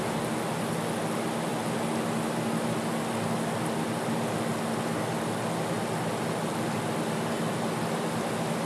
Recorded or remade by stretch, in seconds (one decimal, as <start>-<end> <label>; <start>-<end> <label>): 0.0-8.7 recorded